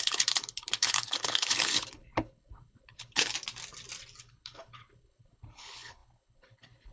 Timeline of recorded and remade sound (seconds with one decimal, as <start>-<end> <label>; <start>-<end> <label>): 0.0-3.3 remade; 3.3-4.2 recorded; 4.2-6.9 remade